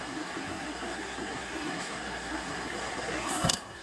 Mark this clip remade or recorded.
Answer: remade